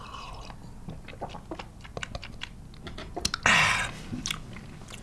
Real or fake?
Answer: real